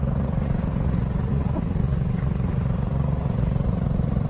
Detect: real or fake fake